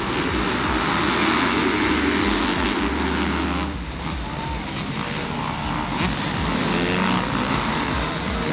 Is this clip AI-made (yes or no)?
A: no